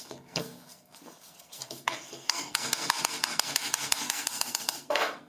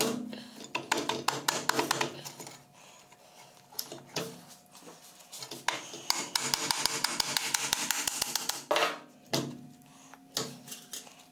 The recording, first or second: second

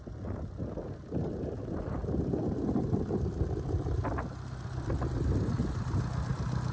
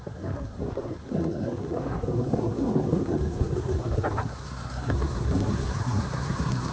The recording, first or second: first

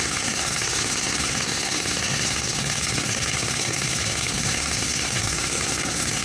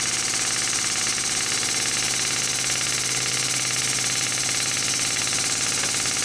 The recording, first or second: second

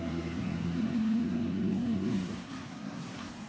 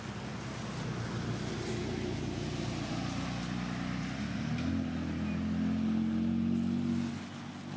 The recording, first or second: second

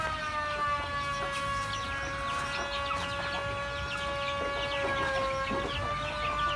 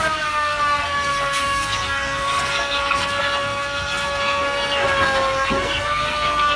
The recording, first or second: first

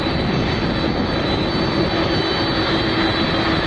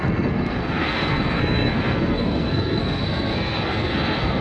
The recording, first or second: first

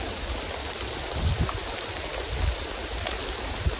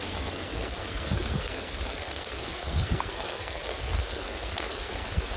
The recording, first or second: first